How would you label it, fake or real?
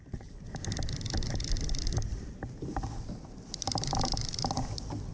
real